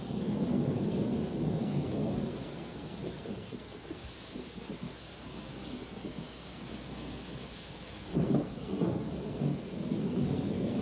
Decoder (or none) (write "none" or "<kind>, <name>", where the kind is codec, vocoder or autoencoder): codec, SNAC